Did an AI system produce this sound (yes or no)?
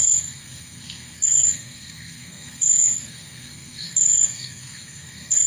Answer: yes